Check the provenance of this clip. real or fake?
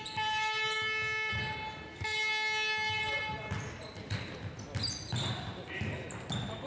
real